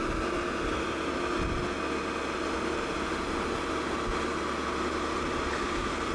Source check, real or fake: real